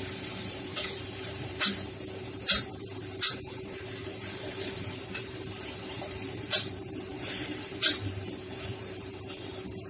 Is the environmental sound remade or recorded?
remade